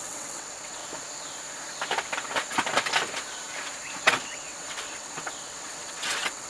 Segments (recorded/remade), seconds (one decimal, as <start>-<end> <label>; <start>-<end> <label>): 0.0-0.8 remade; 0.8-4.0 recorded; 4.0-6.5 remade